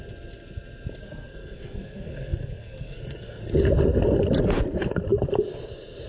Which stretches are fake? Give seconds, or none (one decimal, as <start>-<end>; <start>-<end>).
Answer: 1.0-3.4